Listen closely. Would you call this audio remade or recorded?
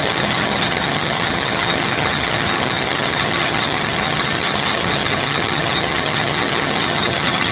remade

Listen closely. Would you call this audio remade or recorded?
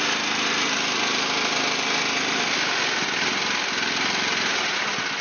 recorded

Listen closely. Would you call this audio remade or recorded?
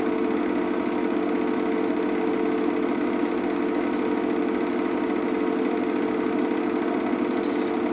recorded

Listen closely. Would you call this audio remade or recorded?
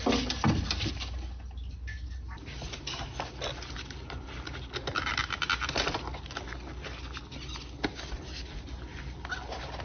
recorded